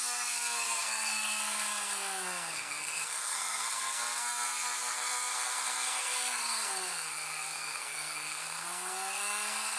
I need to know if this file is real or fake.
fake